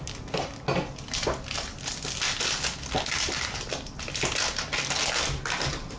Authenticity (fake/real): real